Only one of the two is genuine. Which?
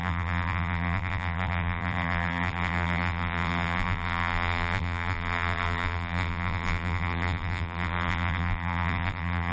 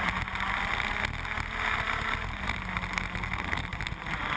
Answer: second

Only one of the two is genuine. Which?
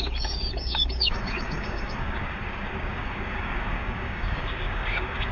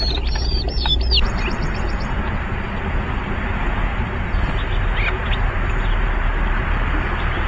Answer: second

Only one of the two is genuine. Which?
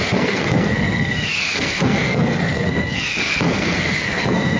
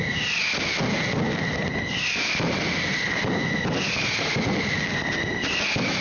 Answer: second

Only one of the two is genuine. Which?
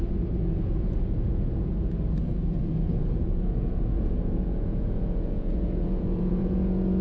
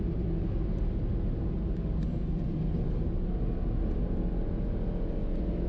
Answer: second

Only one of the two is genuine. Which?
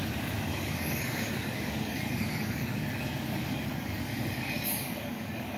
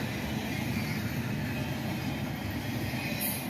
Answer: second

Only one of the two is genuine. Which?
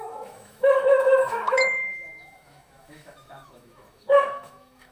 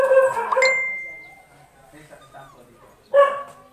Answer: second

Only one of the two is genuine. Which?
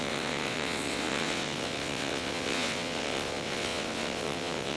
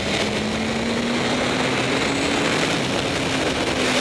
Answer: second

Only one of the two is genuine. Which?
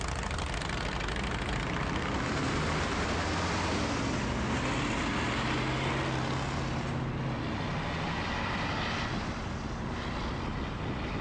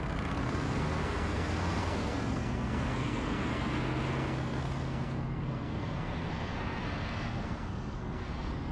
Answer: first